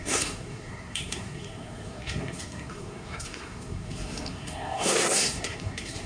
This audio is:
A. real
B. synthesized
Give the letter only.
B